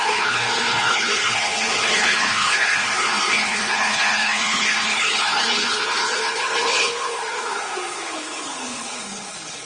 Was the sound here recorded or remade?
remade